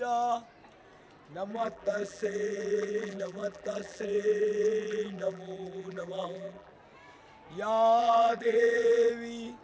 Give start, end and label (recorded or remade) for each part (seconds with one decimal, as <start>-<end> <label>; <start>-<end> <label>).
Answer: 0.0-1.5 recorded; 1.5-6.7 remade; 6.7-8.0 recorded; 8.0-9.1 remade; 9.1-9.6 recorded